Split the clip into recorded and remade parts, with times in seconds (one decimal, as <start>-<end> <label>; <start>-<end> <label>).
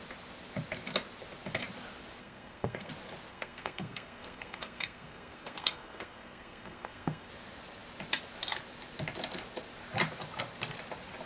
0.0-2.2 recorded; 2.2-2.9 remade; 2.9-3.3 recorded; 3.3-7.3 remade; 7.3-11.3 recorded